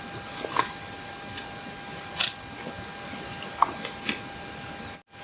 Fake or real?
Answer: real